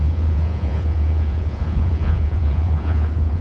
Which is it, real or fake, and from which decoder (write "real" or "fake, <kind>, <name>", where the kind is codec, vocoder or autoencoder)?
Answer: fake, vocoder, Vocos